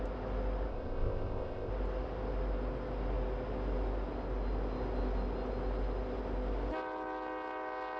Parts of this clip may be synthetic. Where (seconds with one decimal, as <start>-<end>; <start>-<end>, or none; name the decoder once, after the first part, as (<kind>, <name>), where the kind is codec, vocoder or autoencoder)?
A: 0.7-1.7 (codec, ZipCodec)